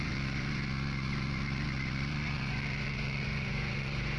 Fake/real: fake